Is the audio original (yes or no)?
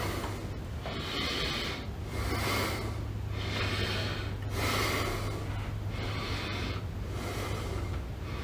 yes